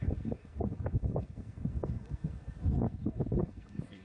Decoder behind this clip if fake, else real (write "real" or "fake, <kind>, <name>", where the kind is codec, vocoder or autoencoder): fake, codec, SNAC